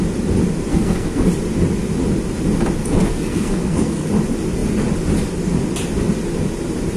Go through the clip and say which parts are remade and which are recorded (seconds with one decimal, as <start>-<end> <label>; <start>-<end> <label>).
0.0-0.7 recorded; 0.7-1.3 remade; 1.3-2.8 recorded; 2.8-4.1 remade; 4.1-7.0 recorded